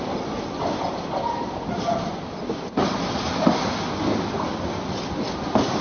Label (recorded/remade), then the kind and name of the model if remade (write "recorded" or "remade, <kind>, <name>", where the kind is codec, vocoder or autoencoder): recorded